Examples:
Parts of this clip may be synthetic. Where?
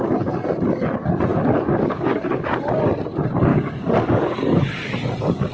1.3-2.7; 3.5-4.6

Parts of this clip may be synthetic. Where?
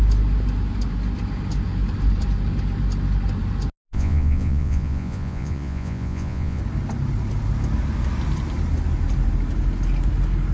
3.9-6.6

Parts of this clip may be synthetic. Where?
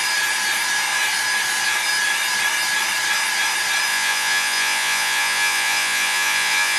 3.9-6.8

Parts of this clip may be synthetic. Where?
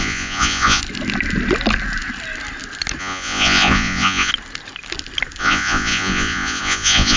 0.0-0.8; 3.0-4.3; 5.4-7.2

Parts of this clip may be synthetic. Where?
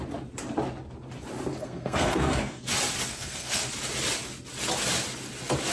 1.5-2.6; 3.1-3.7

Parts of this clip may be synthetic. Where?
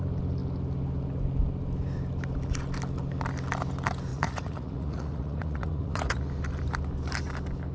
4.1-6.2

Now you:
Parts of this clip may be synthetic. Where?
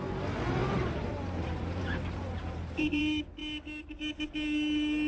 0.6-3.0